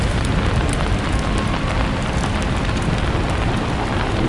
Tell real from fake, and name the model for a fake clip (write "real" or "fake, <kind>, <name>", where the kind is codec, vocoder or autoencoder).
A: real